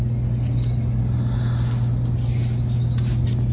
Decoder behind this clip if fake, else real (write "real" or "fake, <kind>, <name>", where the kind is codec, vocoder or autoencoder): real